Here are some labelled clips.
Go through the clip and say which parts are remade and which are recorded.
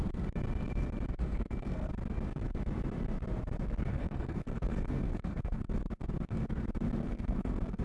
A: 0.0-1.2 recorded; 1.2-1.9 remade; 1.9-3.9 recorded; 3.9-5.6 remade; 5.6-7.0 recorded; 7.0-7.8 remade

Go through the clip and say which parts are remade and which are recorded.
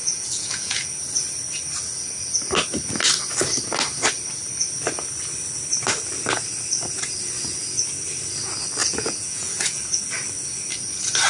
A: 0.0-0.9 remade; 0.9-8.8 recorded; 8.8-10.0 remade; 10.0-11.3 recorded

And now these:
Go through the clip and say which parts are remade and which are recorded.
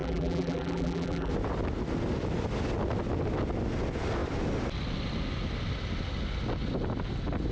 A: 0.0-1.3 remade; 1.3-7.5 recorded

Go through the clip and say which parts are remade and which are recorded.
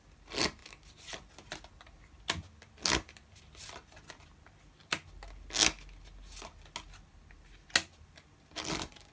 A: 0.0-9.1 recorded